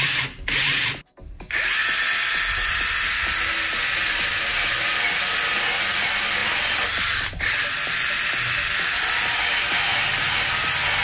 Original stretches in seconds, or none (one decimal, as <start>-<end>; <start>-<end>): 0.0-11.0